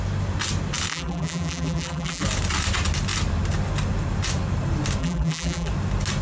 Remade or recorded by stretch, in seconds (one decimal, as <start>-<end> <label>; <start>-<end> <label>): 0.0-0.9 recorded; 0.9-2.2 remade; 2.2-5.0 recorded; 5.0-5.7 remade; 5.7-6.2 recorded